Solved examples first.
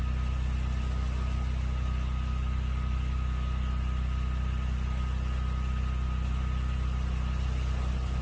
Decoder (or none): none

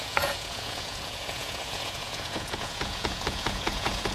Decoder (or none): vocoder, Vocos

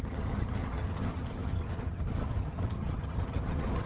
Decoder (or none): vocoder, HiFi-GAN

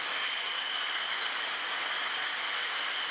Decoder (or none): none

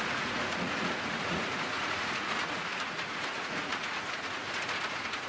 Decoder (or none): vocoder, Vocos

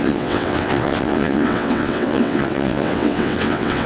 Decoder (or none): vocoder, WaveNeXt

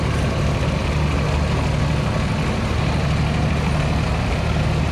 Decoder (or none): none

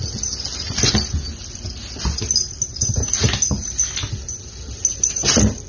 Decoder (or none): none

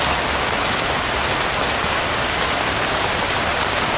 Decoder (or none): none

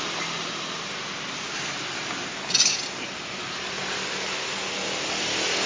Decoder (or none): none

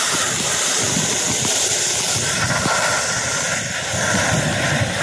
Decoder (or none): none